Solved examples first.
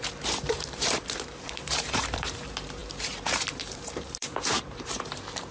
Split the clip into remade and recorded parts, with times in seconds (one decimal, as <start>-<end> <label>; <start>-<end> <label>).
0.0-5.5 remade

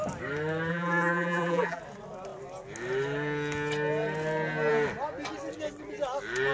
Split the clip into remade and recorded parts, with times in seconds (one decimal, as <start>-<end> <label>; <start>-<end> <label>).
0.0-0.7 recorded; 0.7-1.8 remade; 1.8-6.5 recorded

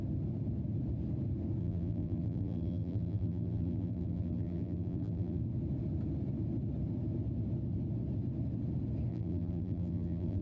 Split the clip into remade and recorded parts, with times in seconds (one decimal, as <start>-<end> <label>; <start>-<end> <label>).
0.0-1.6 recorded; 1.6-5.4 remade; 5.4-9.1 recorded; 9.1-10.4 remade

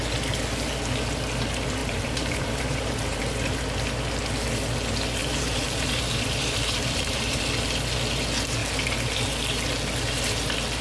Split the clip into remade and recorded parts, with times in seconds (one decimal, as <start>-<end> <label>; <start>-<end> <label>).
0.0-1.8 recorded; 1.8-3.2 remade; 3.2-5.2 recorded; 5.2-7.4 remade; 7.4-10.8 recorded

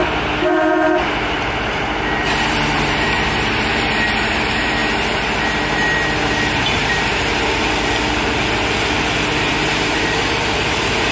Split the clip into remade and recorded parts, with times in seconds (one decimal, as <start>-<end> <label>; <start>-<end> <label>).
0.0-4.8 remade; 4.8-6.3 recorded; 6.3-11.1 remade

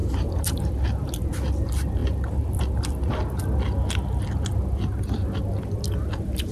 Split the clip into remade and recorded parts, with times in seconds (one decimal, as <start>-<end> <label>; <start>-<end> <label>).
0.0-0.7 remade; 0.7-2.0 recorded; 2.0-2.6 remade; 2.6-6.5 recorded